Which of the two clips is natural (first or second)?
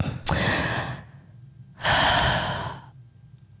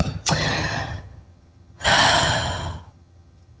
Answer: first